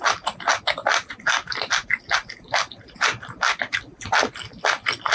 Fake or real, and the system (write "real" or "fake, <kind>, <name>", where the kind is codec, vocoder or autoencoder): real